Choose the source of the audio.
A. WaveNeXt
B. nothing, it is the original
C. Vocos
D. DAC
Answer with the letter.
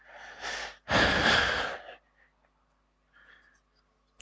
B